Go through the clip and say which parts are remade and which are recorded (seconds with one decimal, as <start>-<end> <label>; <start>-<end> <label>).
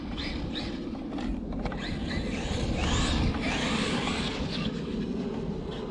0.0-3.6 recorded; 3.6-5.0 remade; 5.0-5.9 recorded